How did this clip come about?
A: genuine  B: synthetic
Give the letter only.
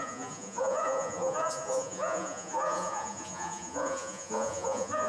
B